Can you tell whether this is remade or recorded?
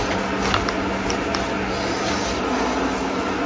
recorded